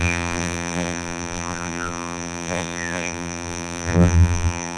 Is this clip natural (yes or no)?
no